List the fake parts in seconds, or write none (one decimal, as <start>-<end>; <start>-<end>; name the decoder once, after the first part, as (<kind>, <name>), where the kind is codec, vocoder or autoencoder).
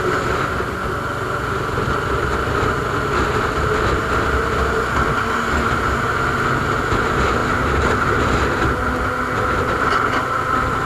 7.4-8.4 (vocoder, BigVGAN v2)